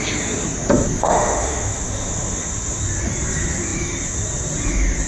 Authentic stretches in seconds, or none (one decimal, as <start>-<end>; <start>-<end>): 0.0-1.0; 2.8-5.1

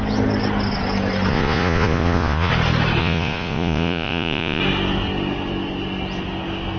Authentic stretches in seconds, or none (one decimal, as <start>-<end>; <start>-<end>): 0.0-1.3; 2.5-3.0; 4.6-6.8

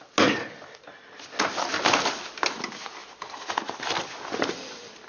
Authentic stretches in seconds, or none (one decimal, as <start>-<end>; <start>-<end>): 0.0-5.1

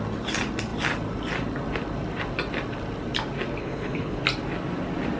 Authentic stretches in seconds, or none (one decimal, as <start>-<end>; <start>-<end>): 0.0-3.6; 4.2-5.2

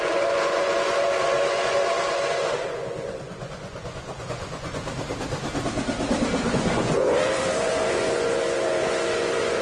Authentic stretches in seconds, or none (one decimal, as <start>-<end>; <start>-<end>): 4.8-6.5

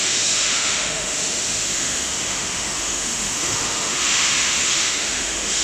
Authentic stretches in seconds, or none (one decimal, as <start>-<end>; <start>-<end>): none

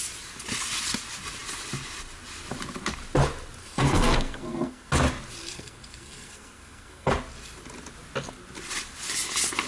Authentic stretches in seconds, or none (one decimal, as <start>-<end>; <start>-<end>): 0.0-3.6; 4.9-5.4; 7.1-9.7